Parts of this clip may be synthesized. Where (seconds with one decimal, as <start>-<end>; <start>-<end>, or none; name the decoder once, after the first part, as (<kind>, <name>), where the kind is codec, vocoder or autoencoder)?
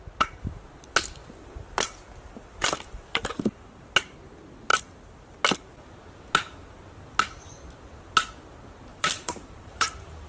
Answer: 1.2-3.4 (vocoder, BigVGAN v2); 8.9-10.3